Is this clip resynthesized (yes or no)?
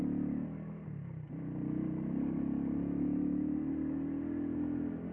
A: no